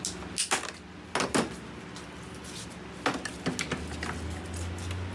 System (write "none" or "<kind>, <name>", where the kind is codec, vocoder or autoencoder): none